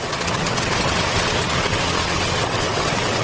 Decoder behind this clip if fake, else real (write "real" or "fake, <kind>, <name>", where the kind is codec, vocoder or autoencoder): fake, vocoder, WaveNeXt